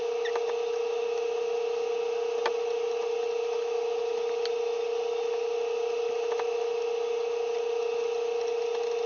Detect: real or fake real